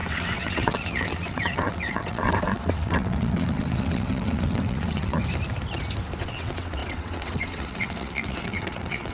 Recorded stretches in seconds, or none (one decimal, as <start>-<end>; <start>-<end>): 5.2-6.2